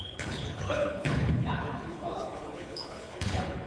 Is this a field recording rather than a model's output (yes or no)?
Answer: no